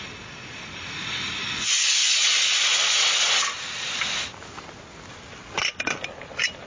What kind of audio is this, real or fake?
real